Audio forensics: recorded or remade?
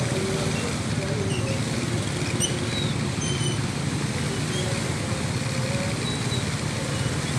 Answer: recorded